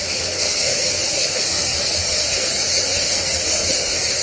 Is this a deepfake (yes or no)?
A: yes